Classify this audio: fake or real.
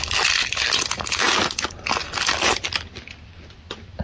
real